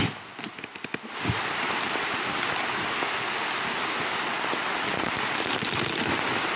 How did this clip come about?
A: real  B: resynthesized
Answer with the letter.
A